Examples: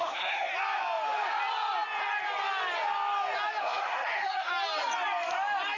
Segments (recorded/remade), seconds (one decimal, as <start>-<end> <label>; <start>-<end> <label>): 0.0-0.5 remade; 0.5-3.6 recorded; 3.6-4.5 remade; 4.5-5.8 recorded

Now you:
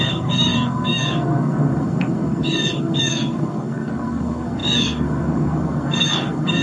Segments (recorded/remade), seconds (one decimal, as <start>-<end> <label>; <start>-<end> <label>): 0.0-6.6 remade

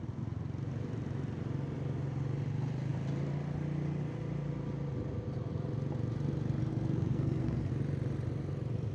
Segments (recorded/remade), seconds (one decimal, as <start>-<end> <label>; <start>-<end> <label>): 0.0-6.7 recorded; 6.7-7.7 remade; 7.7-8.9 recorded

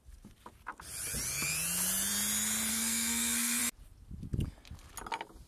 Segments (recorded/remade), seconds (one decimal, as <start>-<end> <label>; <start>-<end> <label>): 0.0-2.7 recorded; 2.7-3.6 remade; 3.6-5.5 recorded